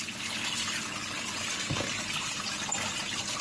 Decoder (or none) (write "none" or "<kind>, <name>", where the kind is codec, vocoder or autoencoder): none